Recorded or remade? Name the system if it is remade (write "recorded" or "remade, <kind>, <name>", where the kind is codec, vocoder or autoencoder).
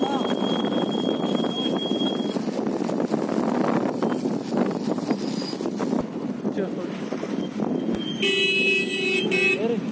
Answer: recorded